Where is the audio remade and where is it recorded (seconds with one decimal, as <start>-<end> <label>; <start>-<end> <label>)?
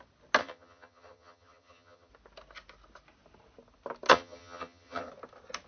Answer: 0.0-0.4 recorded; 0.4-2.1 remade; 2.1-4.1 recorded; 4.1-5.1 remade; 5.1-5.7 recorded